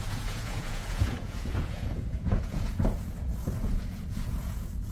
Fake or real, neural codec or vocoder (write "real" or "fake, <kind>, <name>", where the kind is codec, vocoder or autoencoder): fake, vocoder, Vocos